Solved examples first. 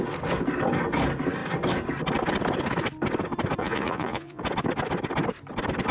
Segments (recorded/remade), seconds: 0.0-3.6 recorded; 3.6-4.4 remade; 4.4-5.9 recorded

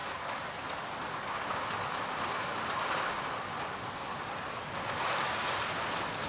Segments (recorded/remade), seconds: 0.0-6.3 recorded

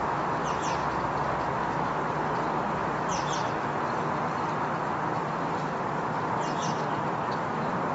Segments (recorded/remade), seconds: 0.0-7.9 recorded